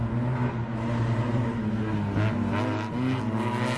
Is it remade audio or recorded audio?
recorded